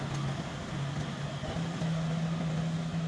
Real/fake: real